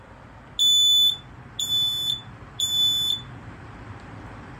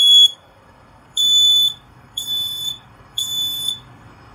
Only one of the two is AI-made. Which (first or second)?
second